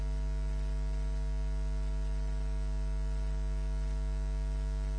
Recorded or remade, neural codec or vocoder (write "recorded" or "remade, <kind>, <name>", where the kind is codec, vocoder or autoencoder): recorded